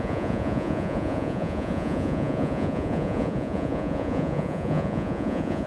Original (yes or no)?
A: no